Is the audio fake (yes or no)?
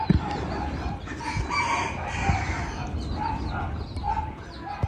no